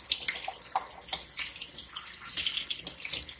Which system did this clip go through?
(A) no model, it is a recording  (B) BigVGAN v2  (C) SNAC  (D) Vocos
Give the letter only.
A